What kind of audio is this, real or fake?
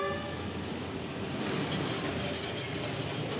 real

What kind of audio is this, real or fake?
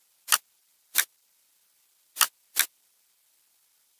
real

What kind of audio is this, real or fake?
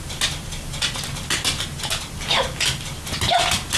real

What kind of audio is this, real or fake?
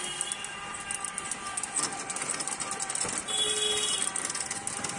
real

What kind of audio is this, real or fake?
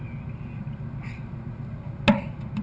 real